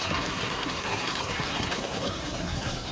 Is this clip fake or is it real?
fake